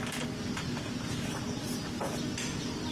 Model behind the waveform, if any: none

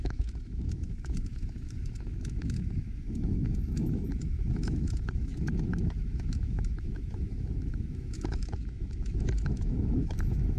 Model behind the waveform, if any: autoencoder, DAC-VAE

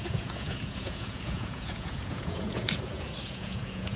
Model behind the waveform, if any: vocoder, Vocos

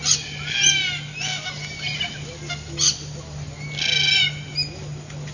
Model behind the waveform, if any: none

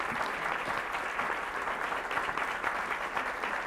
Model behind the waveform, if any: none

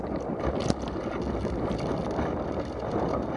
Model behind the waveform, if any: none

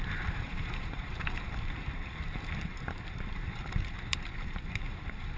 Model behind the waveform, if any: vocoder, BigVGAN v2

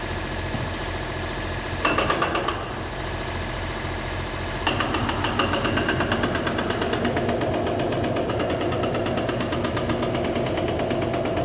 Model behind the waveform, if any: none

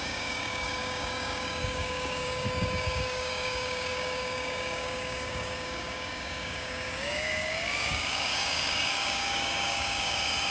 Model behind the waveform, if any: codec, DAC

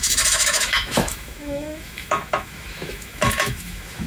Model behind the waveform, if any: autoencoder, DAC-VAE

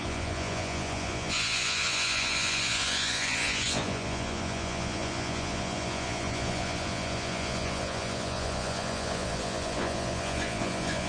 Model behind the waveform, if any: vocoder, Vocos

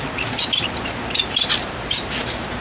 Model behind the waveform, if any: vocoder, BigVGAN v2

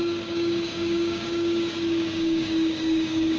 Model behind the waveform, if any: codec, DAC